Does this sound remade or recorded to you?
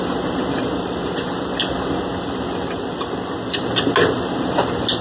recorded